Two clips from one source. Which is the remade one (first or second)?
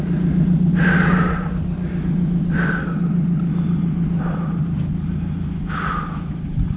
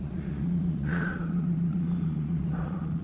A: second